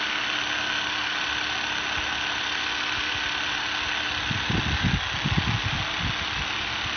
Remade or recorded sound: recorded